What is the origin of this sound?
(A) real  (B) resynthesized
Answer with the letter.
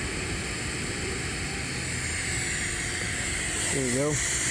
A